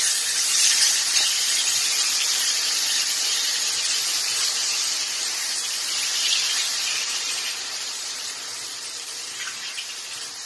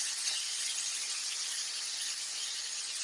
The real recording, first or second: second